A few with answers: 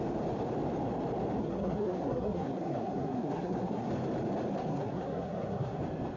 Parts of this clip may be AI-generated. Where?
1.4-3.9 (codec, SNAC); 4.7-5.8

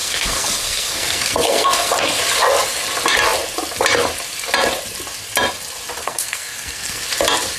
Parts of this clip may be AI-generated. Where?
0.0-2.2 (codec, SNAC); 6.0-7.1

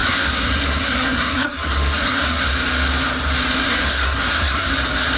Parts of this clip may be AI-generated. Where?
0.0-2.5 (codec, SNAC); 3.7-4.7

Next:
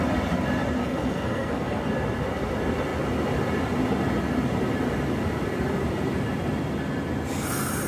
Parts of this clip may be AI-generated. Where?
0.8-1.8 (codec, SNAC)

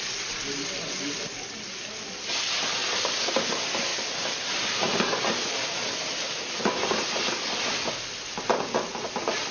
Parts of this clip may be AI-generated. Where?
none